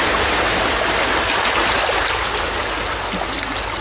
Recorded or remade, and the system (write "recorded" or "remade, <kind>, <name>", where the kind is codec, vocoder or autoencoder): recorded